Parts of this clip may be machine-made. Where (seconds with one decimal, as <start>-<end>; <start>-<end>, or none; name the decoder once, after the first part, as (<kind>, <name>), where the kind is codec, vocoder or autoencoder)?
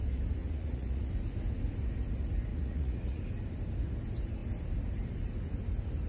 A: 0.4-1.1 (vocoder, Vocos); 2.5-3.2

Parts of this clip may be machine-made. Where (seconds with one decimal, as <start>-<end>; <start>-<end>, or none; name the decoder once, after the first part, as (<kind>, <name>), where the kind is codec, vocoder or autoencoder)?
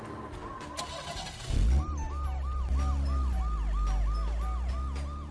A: none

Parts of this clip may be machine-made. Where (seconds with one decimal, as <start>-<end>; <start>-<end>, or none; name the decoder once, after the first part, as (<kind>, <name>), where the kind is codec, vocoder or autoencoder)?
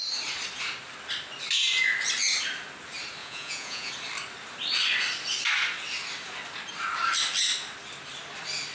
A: 3.2-3.9 (vocoder, Vocos)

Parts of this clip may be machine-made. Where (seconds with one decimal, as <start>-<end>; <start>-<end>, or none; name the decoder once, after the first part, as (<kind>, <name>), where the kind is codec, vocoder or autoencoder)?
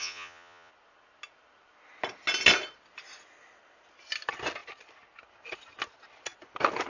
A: 0.0-0.7 (vocoder, Vocos)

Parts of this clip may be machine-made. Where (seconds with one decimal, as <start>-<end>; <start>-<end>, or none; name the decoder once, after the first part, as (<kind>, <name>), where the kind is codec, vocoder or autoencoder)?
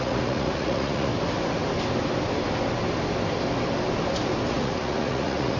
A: 0.0-1.1 (vocoder, Vocos); 4.5-5.6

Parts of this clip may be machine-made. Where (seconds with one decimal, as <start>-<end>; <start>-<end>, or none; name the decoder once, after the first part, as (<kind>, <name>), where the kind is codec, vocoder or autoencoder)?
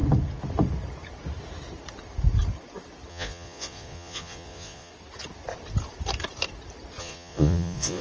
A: 3.1-4.9 (vocoder, Vocos); 7.0-8.0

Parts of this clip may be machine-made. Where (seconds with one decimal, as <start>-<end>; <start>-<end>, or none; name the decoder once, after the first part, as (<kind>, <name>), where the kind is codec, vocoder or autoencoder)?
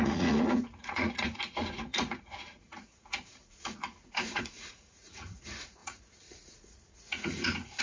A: 0.0-7.8 (vocoder, Vocos)